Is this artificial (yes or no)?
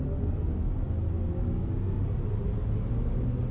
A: no